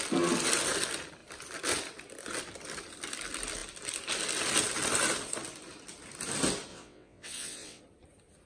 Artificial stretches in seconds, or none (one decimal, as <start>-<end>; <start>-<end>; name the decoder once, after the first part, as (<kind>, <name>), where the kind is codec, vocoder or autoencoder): 6.7-7.8 (vocoder, WaveNeXt)